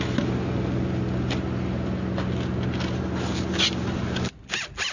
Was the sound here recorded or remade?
recorded